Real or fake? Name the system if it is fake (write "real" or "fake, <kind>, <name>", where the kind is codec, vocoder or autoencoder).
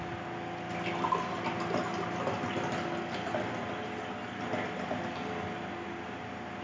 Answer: real